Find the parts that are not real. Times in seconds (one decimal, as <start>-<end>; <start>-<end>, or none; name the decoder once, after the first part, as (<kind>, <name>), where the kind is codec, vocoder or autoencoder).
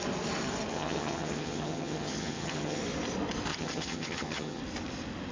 0.7-2.8 (vocoder, HiFi-GAN); 3.5-4.6